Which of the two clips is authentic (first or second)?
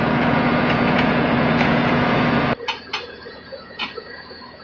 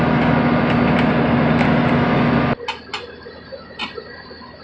second